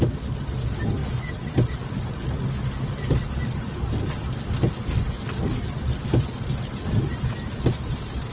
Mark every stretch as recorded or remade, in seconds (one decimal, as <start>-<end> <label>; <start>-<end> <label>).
0.0-8.3 recorded